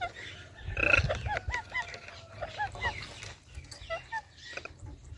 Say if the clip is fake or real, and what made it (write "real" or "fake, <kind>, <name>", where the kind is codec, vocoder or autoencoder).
real